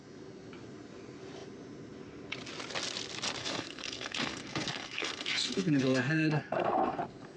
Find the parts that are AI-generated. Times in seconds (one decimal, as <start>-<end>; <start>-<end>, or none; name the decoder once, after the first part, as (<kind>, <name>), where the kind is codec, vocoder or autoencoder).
3.4-7.0 (codec, SNAC)

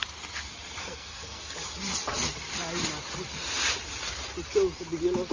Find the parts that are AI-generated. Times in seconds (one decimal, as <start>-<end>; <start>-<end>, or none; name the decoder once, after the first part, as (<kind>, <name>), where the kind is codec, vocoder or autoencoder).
0.8-1.4 (codec, SNAC)

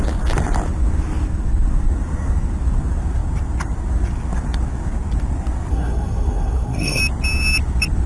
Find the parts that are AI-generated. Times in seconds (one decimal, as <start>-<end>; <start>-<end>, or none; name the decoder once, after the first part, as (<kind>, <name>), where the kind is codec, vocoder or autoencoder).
5.7-7.0 (codec, SNAC)

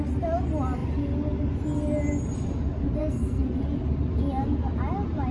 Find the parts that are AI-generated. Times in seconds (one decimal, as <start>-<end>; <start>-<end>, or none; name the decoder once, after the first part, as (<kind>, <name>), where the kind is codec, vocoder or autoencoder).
3.0-3.6 (codec, SNAC)

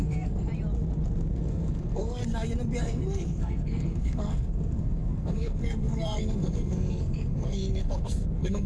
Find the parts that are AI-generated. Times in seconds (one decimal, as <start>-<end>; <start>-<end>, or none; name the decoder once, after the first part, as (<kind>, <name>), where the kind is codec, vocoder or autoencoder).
0.0-0.5 (codec, SNAC); 1.3-2.2; 2.8-8.7